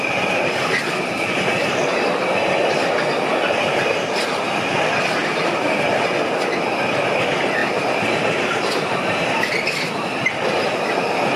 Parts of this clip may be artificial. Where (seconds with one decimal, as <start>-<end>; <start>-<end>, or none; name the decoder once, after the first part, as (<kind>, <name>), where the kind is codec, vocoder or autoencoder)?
7.6-9.5 (vocoder, BigVGAN v2)